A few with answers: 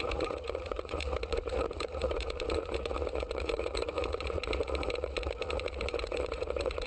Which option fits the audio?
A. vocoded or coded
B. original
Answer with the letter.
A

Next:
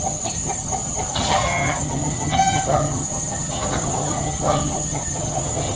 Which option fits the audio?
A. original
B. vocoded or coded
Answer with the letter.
B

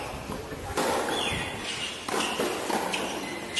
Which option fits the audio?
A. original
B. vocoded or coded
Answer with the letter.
A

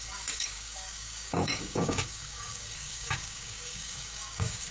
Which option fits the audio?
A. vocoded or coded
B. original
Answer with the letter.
A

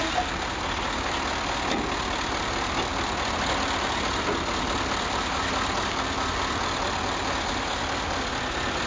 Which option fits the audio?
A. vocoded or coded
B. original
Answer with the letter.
B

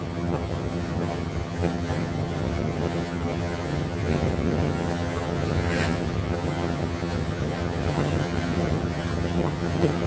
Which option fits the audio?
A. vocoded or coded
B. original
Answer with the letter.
A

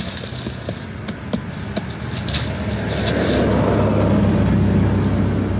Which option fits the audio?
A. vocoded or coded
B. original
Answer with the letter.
B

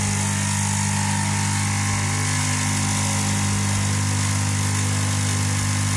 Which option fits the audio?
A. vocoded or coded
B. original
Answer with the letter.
B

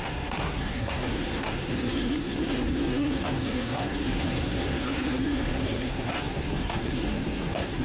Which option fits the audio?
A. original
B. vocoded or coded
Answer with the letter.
B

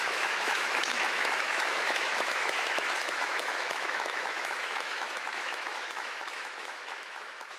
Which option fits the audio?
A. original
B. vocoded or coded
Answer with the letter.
B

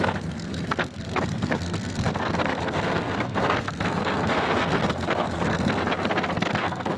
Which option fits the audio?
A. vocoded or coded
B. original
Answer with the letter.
A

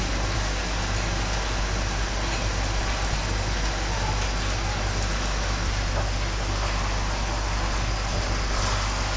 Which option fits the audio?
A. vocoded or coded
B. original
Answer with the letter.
B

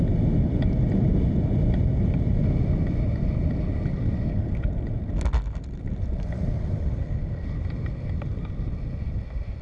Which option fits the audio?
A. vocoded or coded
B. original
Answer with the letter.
B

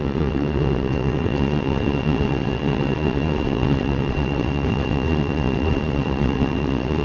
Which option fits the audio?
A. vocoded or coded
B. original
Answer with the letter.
A